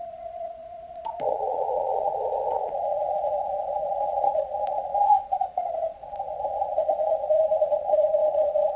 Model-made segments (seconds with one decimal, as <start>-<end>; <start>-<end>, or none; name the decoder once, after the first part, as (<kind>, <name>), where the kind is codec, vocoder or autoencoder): 0.0-8.8 (vocoder, Vocos)

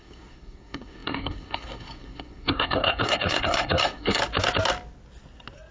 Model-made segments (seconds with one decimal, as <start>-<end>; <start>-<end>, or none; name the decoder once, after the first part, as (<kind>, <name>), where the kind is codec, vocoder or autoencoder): 0.0-4.2 (codec, SNAC)

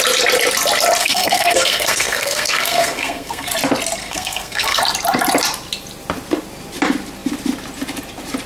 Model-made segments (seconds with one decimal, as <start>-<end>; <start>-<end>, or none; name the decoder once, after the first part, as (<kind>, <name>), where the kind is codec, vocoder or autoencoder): 1.0-3.5 (codec, SNAC); 4.0-4.8

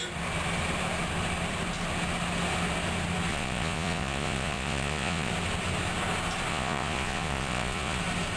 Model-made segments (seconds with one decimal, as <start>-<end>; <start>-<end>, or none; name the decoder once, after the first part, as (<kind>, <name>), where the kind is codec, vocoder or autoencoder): 3.3-5.3 (vocoder, Vocos); 6.5-8.0